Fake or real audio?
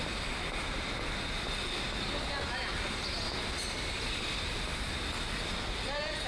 real